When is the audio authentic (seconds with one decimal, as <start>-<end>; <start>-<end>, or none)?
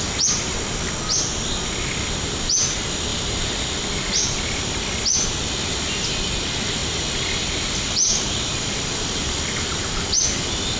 0.0-10.8